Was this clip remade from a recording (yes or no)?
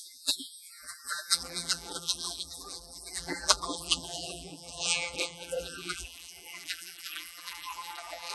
yes